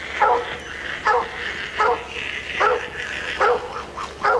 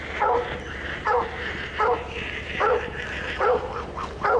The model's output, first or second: second